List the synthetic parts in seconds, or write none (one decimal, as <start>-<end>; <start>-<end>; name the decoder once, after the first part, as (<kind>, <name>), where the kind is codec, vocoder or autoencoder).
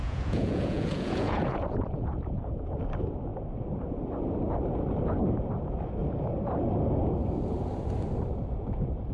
0.0-2.9 (vocoder, Vocos)